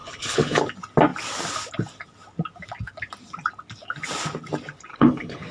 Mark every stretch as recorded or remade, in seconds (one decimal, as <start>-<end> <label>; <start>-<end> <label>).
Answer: 0.0-0.6 remade; 0.6-4.9 recorded; 4.9-5.5 remade